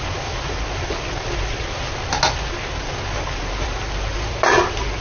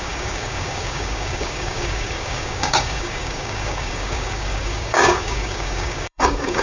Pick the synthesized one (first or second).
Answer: second